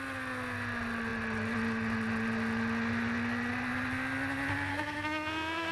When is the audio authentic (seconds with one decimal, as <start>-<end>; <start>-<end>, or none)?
0.0-4.7